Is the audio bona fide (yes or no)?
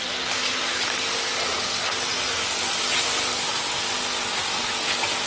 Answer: yes